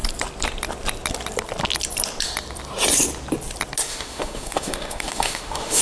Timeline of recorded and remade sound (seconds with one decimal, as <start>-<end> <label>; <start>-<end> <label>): 0.0-3.9 recorded; 3.9-5.8 remade